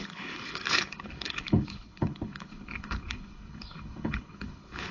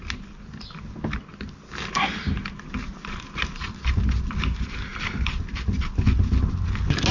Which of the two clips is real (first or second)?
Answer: second